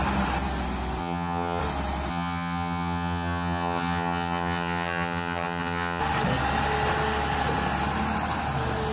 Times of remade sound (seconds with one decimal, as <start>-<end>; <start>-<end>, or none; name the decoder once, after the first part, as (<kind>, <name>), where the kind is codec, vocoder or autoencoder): 1.0-1.6 (vocoder, HiFi-GAN); 2.1-6.0